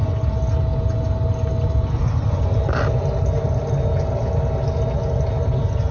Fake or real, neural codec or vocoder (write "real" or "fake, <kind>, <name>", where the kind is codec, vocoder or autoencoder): real